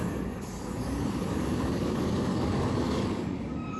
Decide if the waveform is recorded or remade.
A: remade